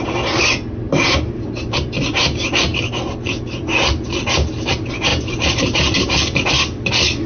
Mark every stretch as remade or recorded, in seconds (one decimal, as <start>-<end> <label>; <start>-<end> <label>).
0.0-0.9 recorded; 0.9-1.9 remade; 1.9-5.1 recorded; 5.1-6.5 remade; 6.5-7.3 recorded